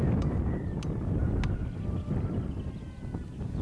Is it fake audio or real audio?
real